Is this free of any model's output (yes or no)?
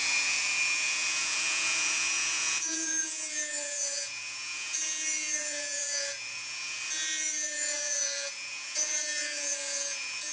no